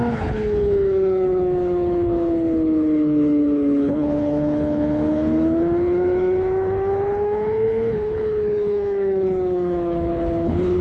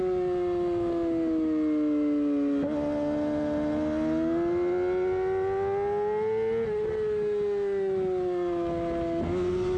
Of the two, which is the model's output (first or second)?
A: first